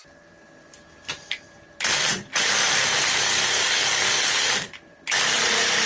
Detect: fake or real fake